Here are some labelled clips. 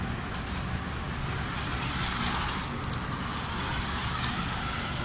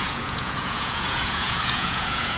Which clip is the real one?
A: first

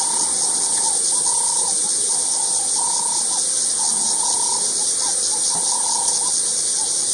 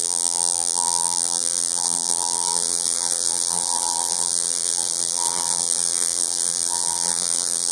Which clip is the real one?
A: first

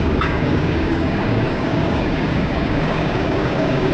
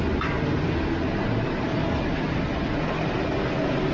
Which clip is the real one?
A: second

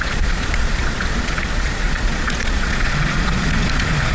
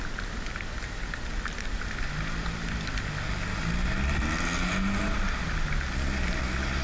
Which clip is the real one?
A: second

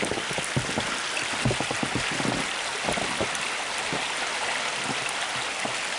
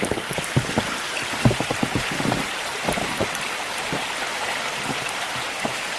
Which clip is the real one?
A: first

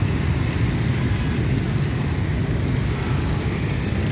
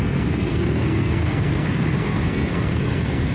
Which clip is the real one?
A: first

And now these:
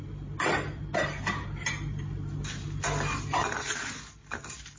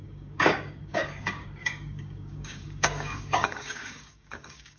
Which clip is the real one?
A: first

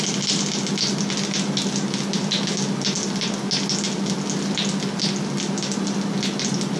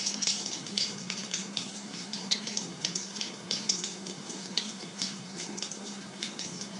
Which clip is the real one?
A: first